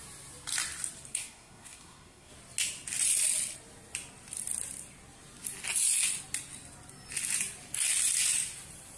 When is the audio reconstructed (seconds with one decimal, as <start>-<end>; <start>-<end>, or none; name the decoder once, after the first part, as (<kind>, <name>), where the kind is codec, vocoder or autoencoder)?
1.1-2.3 (codec, SNAC)